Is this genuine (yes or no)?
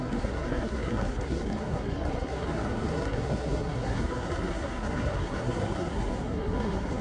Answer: no